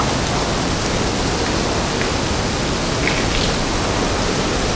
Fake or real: real